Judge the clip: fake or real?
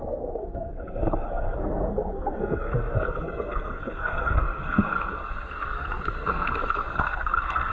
fake